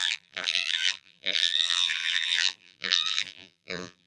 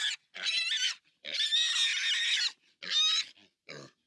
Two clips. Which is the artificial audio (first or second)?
first